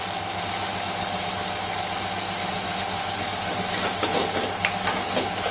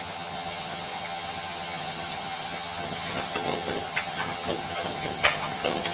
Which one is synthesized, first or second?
second